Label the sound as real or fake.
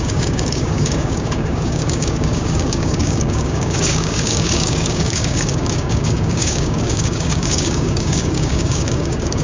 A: fake